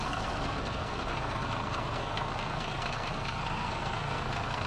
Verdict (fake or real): fake